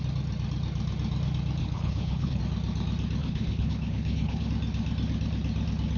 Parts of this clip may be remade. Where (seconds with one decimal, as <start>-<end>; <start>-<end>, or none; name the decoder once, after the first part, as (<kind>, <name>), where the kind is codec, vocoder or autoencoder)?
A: 1.6-2.4 (codec, HILCodec); 3.2-4.5